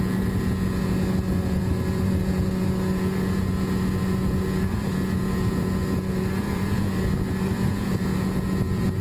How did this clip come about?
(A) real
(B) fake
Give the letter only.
B